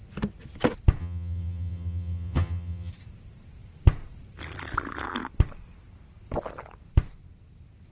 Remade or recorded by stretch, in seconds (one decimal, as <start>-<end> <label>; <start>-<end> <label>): 0.0-1.0 recorded; 1.0-2.9 remade; 2.9-7.9 recorded